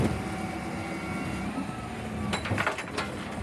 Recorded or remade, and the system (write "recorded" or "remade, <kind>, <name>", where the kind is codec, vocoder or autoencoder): recorded